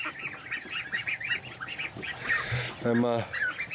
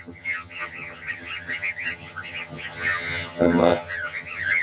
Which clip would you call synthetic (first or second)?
second